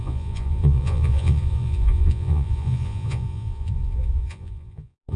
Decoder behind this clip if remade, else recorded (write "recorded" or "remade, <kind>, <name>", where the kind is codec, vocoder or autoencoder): remade, vocoder, Vocos